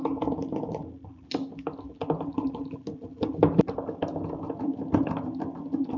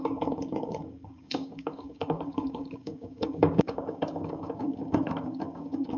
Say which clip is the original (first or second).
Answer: first